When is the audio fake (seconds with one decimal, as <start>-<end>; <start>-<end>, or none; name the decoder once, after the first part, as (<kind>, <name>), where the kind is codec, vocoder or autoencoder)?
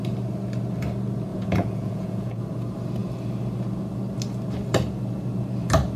1.3-2.4 (vocoder, Vocos)